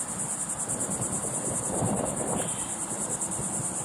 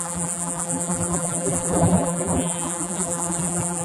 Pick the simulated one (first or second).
second